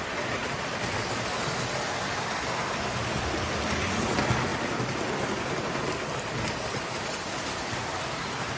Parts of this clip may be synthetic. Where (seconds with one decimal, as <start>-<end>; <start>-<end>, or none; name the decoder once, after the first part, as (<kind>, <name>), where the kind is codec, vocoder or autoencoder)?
none